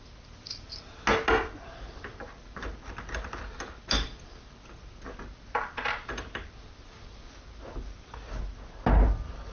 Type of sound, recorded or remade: recorded